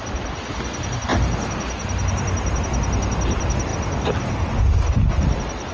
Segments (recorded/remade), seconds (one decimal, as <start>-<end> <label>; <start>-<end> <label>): 0.0-5.7 recorded